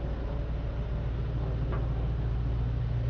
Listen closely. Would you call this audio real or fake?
real